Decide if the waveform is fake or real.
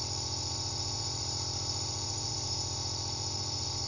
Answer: fake